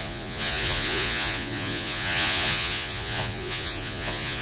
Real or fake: fake